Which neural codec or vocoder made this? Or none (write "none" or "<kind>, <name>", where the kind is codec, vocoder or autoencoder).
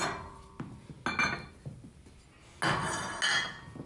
none